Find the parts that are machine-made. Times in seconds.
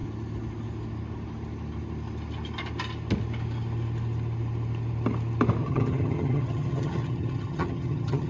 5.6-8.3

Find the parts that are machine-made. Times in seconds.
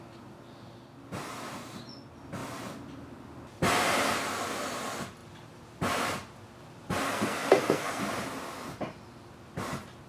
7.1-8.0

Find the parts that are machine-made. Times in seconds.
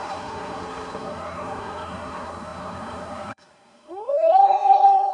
0.0-5.1